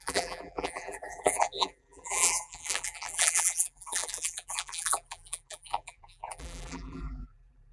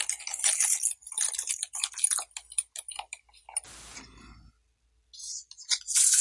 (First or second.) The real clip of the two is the second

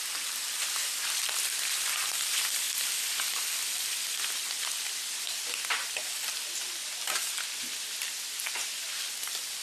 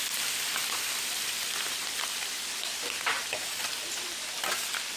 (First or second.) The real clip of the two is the first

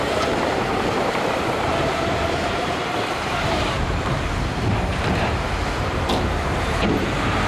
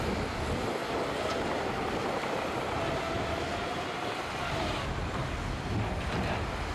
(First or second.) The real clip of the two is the second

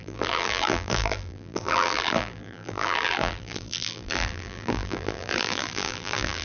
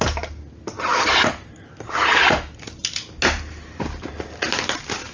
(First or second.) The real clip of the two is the second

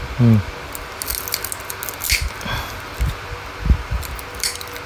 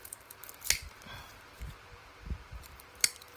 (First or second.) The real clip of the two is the first